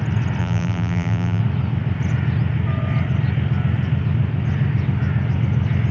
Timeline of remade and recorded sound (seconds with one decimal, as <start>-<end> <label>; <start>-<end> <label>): 0.0-0.4 recorded; 0.4-1.4 remade; 1.4-5.9 recorded